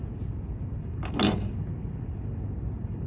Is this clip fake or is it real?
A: real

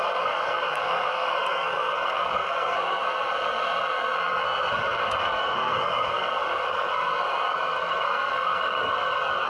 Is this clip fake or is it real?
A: fake